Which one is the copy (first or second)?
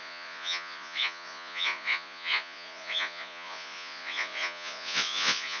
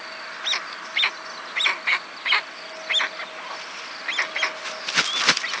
first